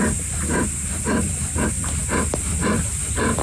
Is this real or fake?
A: real